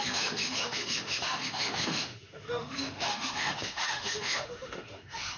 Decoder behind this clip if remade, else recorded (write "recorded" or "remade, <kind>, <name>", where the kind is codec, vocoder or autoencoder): remade, autoencoder, DAC-VAE